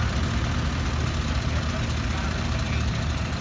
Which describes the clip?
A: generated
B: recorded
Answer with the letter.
B